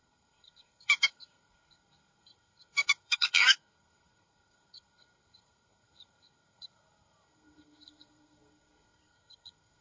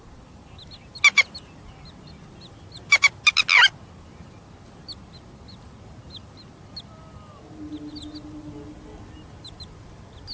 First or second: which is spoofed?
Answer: first